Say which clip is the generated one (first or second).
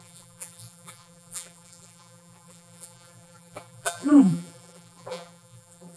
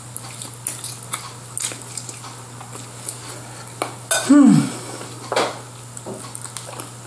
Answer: first